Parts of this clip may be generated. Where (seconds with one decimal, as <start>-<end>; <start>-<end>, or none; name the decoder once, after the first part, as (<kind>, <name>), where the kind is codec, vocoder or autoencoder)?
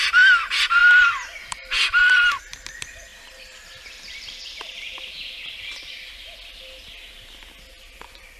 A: 0.8-2.4 (vocoder, BigVGAN v2); 3.1-6.1